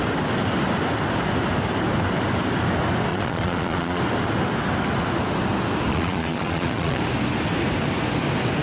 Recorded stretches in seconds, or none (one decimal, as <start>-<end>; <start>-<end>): 0.0-3.1; 4.0-5.9; 7.0-8.6